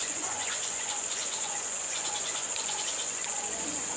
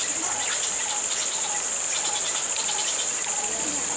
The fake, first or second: first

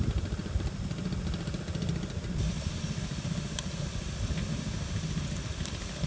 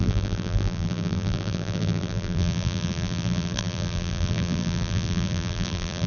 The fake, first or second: second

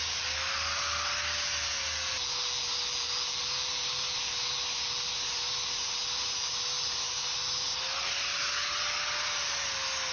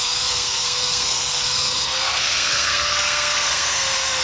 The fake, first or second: second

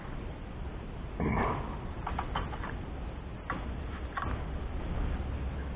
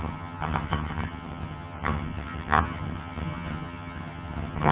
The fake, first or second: second